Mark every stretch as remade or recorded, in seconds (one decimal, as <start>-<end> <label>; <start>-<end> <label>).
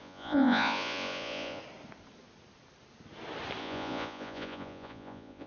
0.0-1.6 remade; 1.6-3.6 recorded; 3.6-5.5 remade